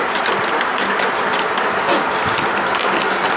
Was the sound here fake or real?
real